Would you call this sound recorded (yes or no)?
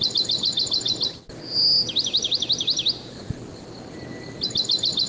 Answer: yes